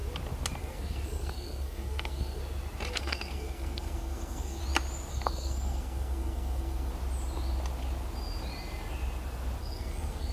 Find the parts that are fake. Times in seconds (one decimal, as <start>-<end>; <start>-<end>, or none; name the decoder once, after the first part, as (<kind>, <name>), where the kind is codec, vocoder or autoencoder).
0.6-2.4 (codec, SNAC); 2.9-4.6; 5.1-6.9; 9.6-10.3